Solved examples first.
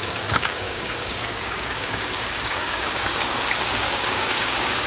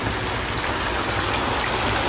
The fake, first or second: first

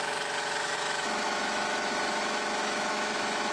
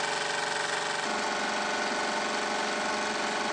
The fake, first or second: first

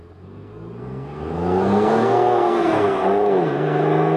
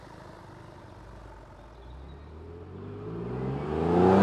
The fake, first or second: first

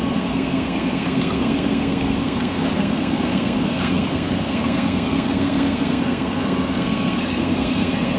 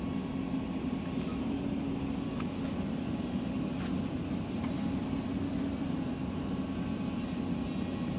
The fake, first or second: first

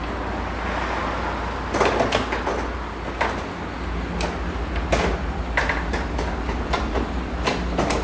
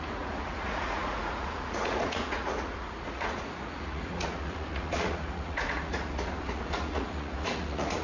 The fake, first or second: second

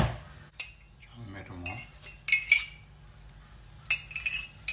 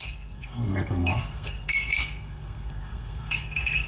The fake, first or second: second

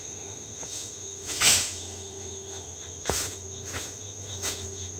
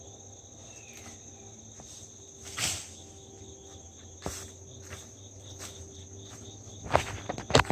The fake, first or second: first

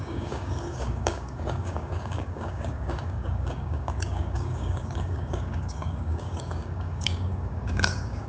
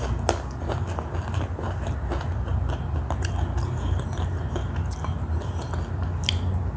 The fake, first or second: first